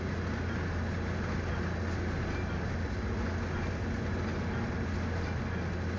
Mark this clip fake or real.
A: real